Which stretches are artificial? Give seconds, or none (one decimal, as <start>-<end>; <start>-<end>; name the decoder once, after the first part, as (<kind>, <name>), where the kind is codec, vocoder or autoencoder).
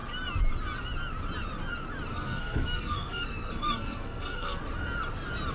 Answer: 2.1-4.6 (codec, SNAC)